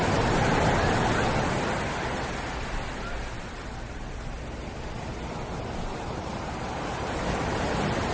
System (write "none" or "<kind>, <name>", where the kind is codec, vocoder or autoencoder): none